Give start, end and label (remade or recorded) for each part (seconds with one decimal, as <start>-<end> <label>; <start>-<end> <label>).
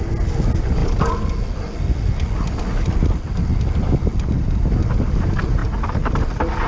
0.0-6.7 recorded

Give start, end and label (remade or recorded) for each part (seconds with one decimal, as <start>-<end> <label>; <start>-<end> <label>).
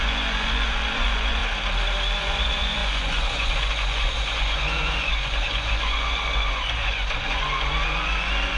0.0-1.4 remade; 1.4-2.2 recorded; 2.2-8.6 remade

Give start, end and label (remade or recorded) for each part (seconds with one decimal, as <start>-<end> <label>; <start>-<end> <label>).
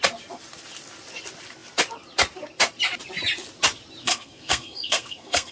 0.0-4.0 recorded; 4.0-5.5 remade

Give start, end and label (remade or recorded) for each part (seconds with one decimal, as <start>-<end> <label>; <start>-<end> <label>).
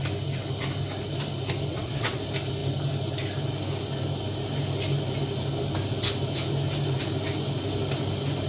0.0-1.7 recorded; 1.7-2.2 remade; 2.2-8.5 recorded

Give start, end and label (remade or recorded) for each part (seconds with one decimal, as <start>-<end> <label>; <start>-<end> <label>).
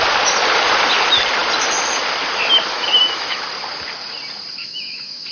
0.0-2.7 recorded; 2.7-3.4 remade; 3.4-4.6 recorded; 4.6-5.3 remade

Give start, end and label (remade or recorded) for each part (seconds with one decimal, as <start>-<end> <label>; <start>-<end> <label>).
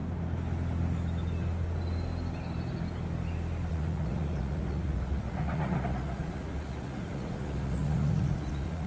0.0-3.7 recorded; 3.7-8.9 remade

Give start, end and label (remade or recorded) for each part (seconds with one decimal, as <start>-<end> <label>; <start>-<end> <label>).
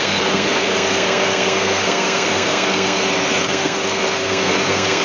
0.0-5.0 remade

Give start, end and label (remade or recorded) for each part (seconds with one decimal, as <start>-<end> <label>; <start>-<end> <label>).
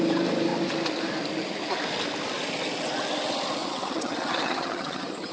0.0-3.6 recorded; 3.6-5.3 remade